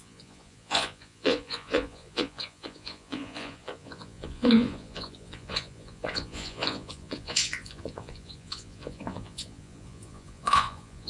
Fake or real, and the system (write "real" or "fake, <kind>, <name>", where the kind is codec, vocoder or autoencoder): fake, vocoder, Vocos